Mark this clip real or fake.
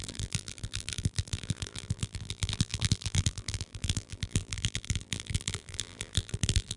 fake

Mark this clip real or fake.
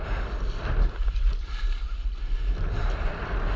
real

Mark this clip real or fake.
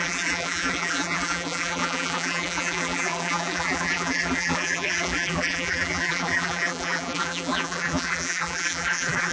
fake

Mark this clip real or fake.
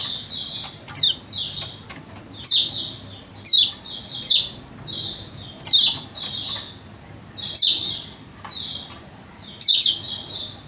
real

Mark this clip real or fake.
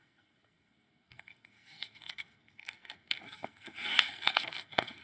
fake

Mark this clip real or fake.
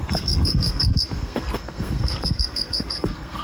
fake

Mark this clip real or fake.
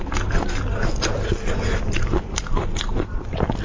fake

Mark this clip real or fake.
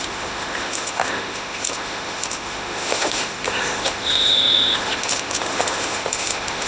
fake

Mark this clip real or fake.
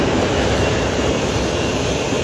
fake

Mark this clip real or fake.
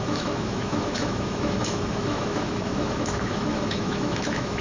fake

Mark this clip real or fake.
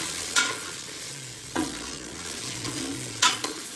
fake